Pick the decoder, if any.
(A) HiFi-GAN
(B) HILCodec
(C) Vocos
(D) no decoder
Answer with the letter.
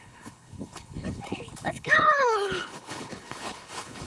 B